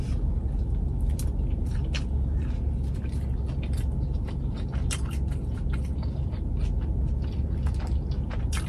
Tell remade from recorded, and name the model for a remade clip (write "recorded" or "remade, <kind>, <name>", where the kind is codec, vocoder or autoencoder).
recorded